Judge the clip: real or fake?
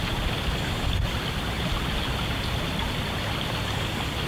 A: real